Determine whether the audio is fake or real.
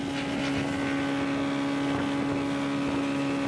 real